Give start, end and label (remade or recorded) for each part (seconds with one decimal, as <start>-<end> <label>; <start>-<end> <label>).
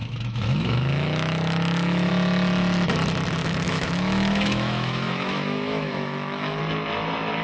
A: 0.0-2.1 remade; 2.1-3.4 recorded; 3.4-6.6 remade; 6.6-7.4 recorded